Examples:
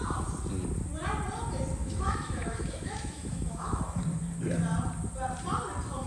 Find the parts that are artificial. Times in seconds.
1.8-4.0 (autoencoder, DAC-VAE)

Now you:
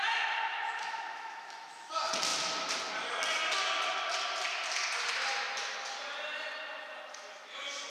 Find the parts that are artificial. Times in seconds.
0.5-1.9 (autoencoder, DAC-VAE)